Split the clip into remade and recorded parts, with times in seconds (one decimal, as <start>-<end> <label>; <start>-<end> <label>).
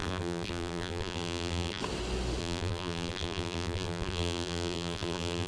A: 0.0-1.8 remade; 1.8-2.4 recorded; 2.4-5.5 remade